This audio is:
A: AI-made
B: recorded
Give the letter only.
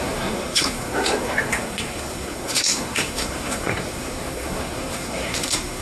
A